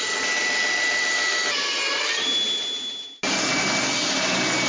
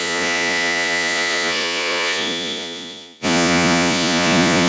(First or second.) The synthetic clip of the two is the second